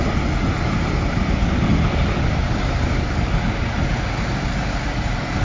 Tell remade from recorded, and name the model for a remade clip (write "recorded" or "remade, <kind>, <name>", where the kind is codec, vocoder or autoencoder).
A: recorded